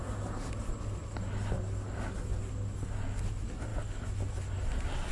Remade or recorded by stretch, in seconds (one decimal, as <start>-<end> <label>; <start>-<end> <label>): 0.0-5.1 recorded